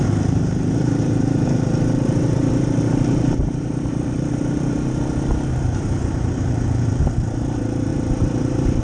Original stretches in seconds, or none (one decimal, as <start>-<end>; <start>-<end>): none